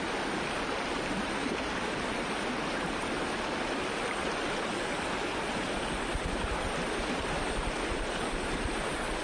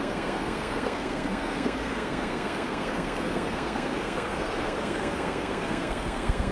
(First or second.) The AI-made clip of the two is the second